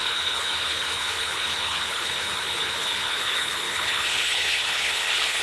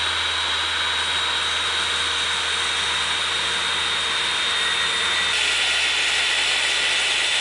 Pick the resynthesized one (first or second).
first